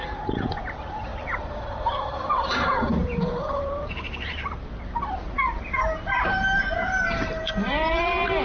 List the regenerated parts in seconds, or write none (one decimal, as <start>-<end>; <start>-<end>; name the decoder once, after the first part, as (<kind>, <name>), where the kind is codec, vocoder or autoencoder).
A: 0.0-4.6 (vocoder, BigVGAN v2); 6.3-8.4